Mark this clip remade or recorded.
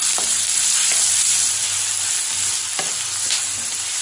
recorded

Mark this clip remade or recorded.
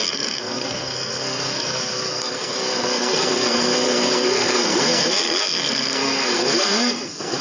remade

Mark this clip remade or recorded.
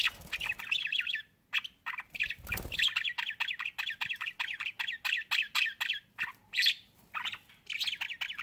recorded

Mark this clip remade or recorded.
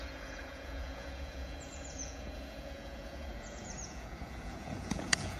remade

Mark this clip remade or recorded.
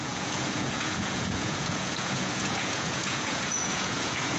remade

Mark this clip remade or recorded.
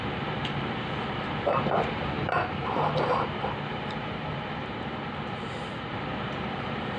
remade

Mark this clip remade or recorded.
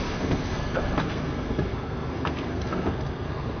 remade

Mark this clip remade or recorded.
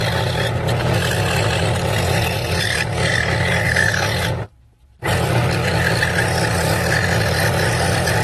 recorded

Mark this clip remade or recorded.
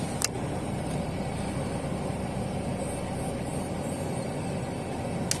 recorded